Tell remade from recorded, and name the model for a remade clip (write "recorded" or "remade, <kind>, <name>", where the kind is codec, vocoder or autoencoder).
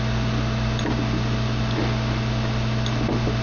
recorded